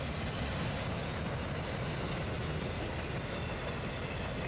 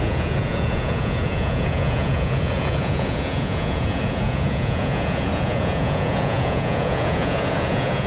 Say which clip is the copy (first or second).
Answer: second